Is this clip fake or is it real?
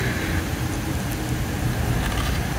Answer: real